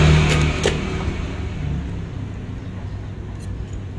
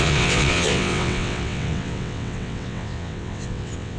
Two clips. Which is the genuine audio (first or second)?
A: first